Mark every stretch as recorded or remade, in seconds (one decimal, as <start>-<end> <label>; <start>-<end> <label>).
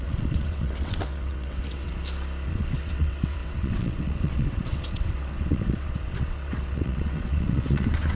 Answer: 0.0-1.9 remade; 1.9-2.5 recorded; 2.5-8.1 remade